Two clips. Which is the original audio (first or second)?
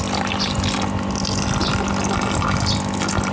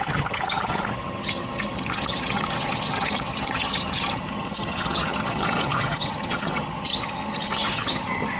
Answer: first